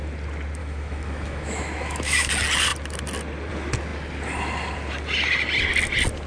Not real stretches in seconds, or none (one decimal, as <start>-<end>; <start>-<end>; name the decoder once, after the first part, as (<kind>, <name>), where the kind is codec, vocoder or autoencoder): 0.6-2.3 (autoencoder, DAC-VAE)